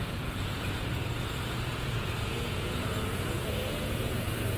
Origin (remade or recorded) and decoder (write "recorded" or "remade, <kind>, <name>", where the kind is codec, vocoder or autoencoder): remade, vocoder, Vocos